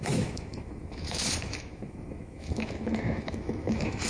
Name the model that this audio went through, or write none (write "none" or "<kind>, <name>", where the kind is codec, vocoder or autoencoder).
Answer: autoencoder, DAC-VAE